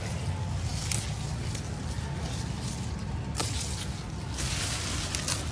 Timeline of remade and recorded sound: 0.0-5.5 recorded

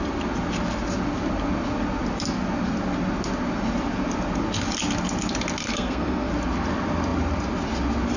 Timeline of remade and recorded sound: 0.0-5.6 recorded; 5.6-6.3 remade; 6.3-8.2 recorded

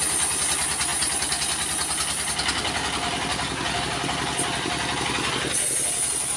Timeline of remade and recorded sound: 0.0-6.4 recorded